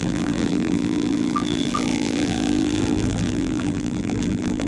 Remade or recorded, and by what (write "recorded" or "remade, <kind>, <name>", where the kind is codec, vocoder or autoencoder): remade, vocoder, BigVGAN v2